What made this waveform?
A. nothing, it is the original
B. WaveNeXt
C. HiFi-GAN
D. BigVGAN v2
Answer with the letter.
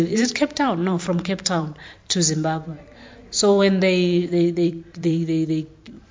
D